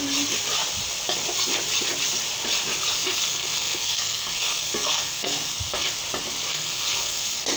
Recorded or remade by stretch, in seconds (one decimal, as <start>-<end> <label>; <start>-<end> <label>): 0.0-3.0 recorded; 3.0-5.9 remade; 5.9-6.5 recorded; 6.5-7.6 remade